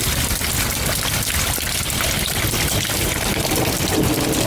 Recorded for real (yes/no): yes